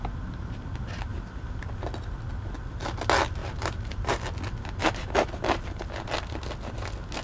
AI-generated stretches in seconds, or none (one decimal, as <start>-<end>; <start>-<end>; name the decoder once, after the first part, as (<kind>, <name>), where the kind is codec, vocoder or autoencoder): 1.1-1.7 (vocoder, BigVGAN v2); 3.4-4.2; 4.8-5.6